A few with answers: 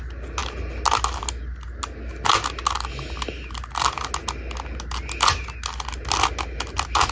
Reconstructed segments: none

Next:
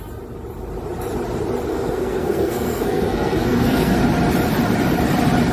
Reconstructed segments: 1.7-4.0 (codec, SNAC)

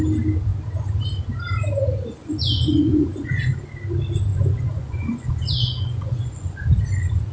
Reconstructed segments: 2.2-3.6 (vocoder, Vocos); 4.3-6.8

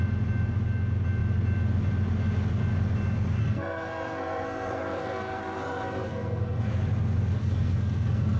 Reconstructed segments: 3.4-6.7 (codec, SNAC); 7.4-8.4

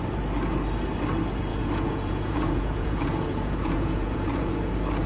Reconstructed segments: 1.5-4.6 (vocoder, Vocos)

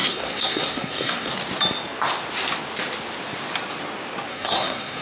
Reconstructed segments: 0.0-1.3 (codec, SNAC); 4.3-5.0

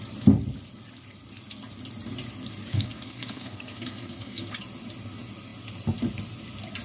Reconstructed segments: 2.7-4.4 (codec, SNAC)

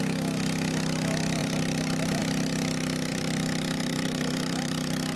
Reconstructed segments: 1.4-2.2 (vocoder, BigVGAN v2); 3.1-5.2